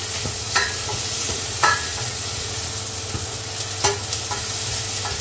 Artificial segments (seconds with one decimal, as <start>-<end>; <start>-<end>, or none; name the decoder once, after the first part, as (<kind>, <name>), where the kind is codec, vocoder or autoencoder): 0.0-2.7 (vocoder, Vocos)